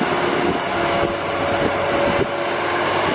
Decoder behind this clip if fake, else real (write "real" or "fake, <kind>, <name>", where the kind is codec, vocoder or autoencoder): real